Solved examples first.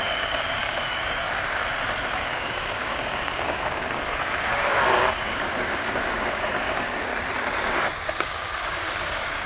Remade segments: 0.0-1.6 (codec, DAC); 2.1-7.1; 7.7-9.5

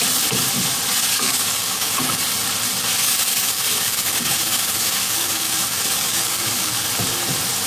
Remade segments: 1.0-2.2 (codec, DAC); 3.0-6.9